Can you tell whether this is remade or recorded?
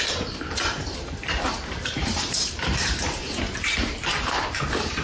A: remade